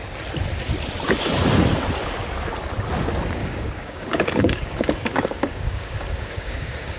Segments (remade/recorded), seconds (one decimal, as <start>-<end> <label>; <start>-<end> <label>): 0.0-3.4 recorded; 3.4-7.0 remade